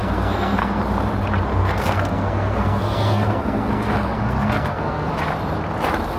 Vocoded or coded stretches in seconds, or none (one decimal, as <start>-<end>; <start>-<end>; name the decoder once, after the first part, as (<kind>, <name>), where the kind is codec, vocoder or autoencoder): 0.0-0.8 (codec, SNAC); 1.5-5.1